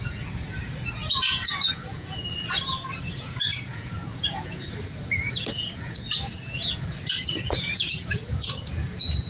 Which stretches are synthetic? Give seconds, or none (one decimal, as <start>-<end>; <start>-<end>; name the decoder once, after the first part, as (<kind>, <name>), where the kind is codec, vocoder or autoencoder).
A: 0.0-9.3 (vocoder, Vocos)